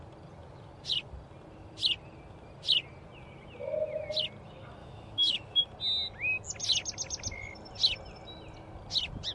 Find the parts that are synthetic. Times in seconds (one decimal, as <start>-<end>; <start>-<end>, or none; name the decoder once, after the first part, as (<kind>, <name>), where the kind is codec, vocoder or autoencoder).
4.8-5.6 (autoencoder, DAC-VAE)